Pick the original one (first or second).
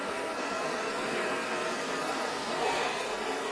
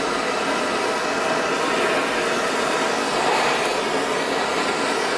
second